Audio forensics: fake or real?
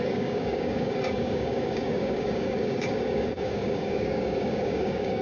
fake